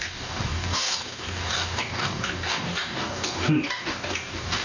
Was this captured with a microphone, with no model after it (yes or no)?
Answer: no